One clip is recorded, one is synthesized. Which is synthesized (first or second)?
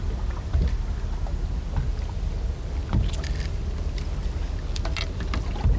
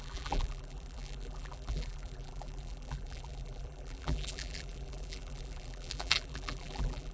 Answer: second